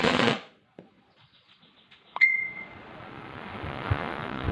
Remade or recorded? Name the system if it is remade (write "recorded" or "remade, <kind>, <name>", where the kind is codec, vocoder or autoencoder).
remade, vocoder, Vocos